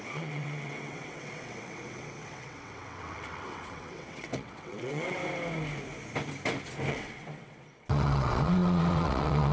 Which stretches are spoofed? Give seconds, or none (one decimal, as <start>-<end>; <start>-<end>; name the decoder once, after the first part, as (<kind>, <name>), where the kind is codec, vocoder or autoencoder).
0.0-5.2 (vocoder, WaveNeXt); 6.9-9.5